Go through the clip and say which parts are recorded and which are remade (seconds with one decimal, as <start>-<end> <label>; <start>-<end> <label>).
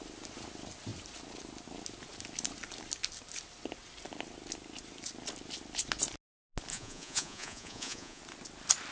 0.0-6.7 recorded; 6.7-8.2 remade; 8.2-8.9 recorded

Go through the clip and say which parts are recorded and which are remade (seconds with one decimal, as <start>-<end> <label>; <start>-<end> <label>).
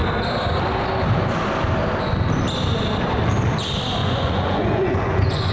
0.0-4.0 recorded; 4.0-5.5 remade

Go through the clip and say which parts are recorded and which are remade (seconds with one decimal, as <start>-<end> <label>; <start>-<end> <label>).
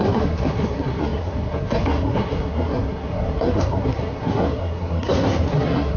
0.0-6.0 remade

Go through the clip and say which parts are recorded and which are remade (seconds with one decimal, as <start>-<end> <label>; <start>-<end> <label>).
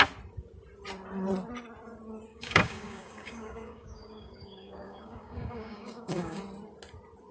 0.0-2.3 recorded; 2.3-6.4 remade; 6.4-7.3 recorded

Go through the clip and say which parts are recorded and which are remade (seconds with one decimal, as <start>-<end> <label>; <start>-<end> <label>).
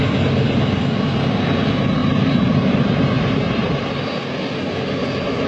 0.0-2.0 recorded; 2.0-3.9 remade; 3.9-5.5 recorded